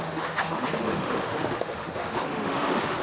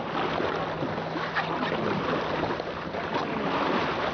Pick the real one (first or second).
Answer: second